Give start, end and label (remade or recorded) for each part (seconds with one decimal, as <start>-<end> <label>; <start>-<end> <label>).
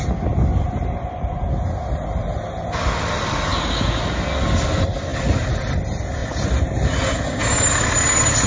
0.0-8.5 recorded